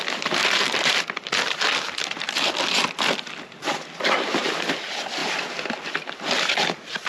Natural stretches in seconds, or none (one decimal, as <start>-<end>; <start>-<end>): 0.0-0.4; 2.5-7.1